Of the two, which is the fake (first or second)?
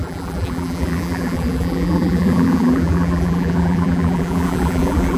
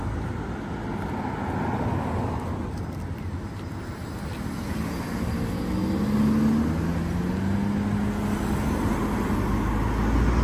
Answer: first